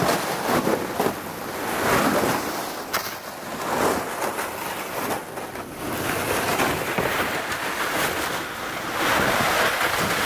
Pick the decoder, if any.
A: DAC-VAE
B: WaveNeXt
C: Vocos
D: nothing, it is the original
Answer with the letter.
D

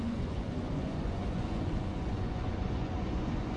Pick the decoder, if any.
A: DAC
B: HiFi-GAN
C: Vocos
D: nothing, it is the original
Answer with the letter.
C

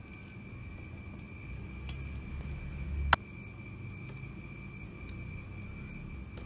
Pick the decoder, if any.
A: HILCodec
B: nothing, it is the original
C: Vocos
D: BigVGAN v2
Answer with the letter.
B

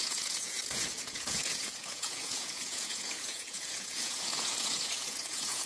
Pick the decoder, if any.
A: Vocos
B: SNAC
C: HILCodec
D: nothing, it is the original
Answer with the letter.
A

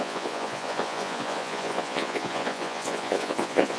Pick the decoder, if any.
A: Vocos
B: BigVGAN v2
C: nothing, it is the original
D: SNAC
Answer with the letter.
A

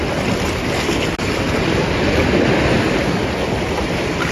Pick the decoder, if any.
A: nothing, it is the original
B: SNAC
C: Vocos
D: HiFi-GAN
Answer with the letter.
A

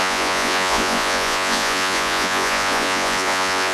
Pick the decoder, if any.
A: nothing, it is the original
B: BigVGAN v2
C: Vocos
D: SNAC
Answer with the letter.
C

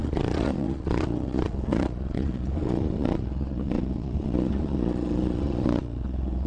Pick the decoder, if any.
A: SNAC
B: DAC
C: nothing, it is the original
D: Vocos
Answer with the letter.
D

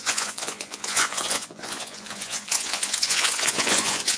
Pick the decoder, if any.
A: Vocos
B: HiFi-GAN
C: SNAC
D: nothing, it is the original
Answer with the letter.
A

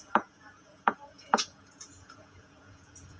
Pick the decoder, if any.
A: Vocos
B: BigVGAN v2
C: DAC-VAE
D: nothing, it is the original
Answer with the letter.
A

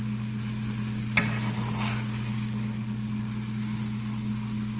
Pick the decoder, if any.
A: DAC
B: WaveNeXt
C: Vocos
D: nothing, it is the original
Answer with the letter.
D